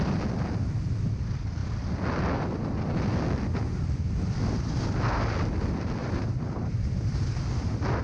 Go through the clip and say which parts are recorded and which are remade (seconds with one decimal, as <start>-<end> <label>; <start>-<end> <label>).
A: 0.0-6.0 recorded; 6.0-7.3 remade; 7.3-8.0 recorded